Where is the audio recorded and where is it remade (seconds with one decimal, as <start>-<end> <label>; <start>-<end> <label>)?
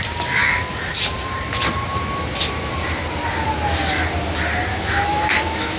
0.0-4.7 recorded; 4.7-5.8 remade